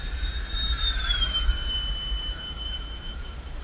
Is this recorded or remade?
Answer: remade